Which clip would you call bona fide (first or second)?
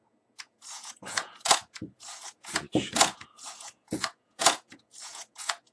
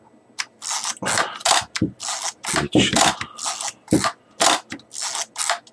second